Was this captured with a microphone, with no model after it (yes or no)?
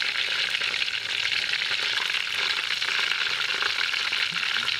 yes